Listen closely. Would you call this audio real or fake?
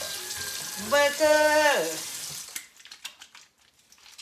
real